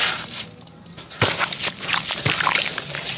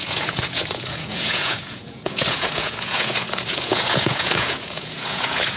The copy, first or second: second